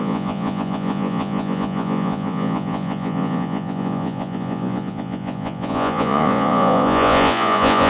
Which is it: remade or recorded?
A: remade